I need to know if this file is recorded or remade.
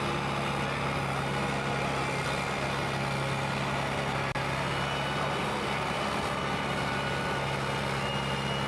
recorded